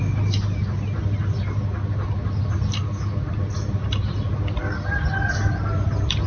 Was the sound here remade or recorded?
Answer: recorded